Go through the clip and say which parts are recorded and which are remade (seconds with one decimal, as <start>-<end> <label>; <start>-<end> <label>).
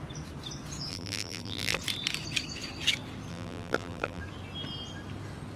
0.0-0.9 recorded; 0.9-1.8 remade; 1.8-3.3 recorded; 3.3-4.2 remade; 4.2-5.6 recorded